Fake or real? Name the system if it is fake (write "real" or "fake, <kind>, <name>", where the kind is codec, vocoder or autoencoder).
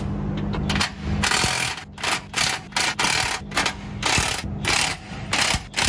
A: real